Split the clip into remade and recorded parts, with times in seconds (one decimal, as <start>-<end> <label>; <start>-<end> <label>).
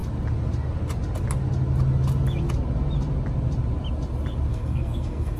0.0-4.5 recorded; 4.5-5.4 remade